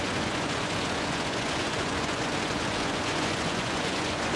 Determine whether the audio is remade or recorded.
remade